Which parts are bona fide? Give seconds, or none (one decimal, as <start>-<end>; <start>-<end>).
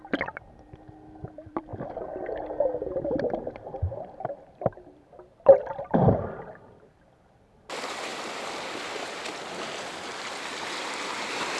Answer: 1.7-3.0